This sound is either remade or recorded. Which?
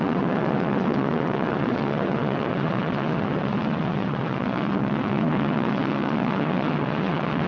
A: remade